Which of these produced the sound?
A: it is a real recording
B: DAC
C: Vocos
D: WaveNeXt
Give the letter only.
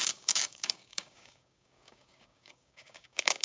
B